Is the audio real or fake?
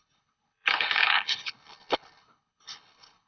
fake